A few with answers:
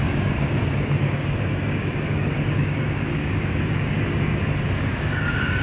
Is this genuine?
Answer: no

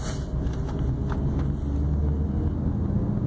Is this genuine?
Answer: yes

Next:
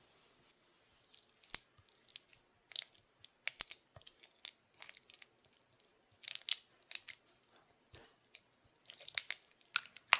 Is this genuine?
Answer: yes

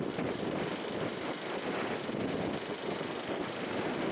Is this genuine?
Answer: yes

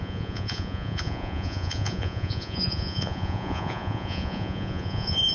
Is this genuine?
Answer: no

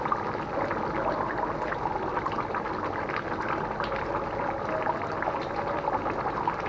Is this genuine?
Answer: yes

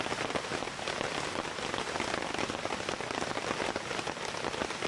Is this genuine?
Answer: yes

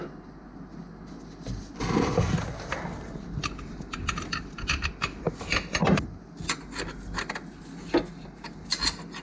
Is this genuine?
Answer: yes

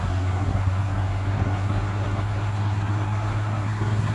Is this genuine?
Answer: no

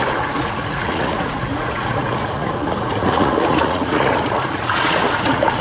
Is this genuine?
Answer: no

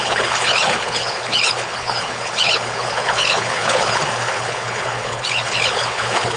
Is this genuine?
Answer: no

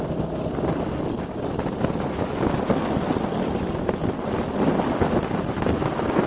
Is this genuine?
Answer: yes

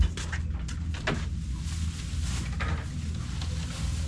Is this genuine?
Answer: yes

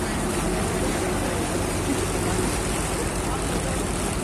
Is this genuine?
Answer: yes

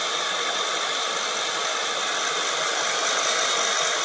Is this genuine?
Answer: yes